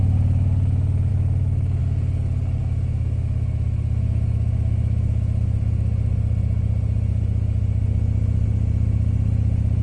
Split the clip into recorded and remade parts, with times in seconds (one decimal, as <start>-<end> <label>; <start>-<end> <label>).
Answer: 0.0-1.1 recorded; 1.1-1.8 remade; 1.8-2.6 recorded; 2.6-5.6 remade; 5.6-9.8 recorded